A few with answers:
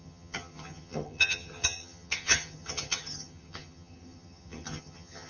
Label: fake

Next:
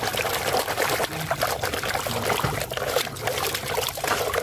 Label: fake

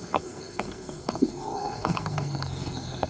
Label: fake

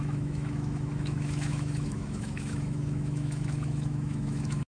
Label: fake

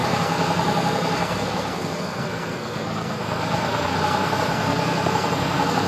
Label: fake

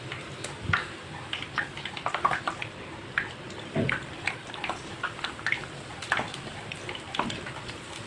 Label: real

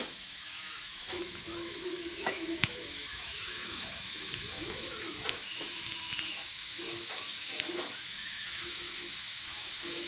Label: fake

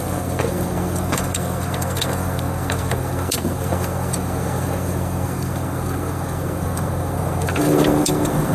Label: fake